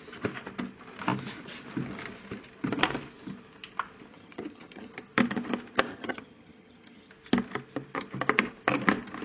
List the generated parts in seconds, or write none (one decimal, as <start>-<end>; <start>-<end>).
4.1-4.9; 5.9-7.1